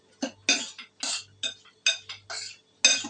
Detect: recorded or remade recorded